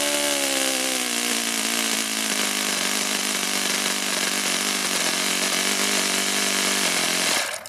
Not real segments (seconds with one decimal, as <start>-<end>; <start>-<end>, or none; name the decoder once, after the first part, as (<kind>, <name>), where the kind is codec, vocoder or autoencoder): none

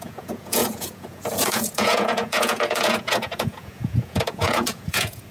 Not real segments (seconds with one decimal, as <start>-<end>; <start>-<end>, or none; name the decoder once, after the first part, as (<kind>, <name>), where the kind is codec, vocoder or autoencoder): 0.0-5.3 (vocoder, Vocos)

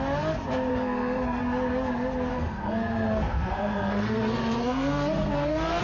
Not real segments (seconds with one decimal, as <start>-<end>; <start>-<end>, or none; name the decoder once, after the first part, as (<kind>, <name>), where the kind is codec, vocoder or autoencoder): 0.7-1.4 (codec, SNAC); 2.3-5.8